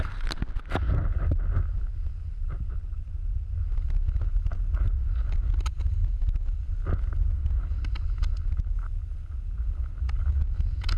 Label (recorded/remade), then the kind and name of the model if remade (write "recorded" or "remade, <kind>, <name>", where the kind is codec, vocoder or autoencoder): recorded